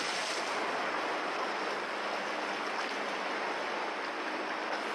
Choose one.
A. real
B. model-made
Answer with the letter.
A